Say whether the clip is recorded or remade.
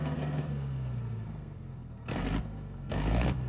remade